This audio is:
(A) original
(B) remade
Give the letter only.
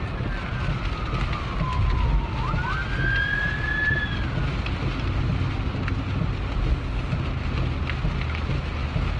A